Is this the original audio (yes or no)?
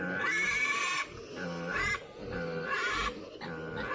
yes